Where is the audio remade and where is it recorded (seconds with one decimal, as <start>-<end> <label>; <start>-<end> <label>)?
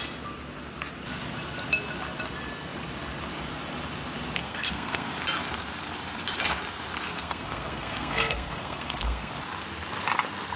0.0-4.4 recorded; 4.4-5.1 remade; 5.1-7.1 recorded; 7.1-9.3 remade; 9.3-10.6 recorded